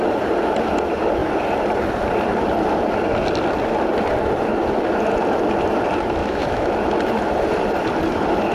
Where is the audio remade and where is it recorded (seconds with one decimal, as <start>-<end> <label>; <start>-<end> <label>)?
0.0-6.2 recorded; 6.2-6.7 remade; 6.7-8.5 recorded